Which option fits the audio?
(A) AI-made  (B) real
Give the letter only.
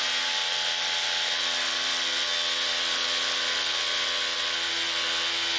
B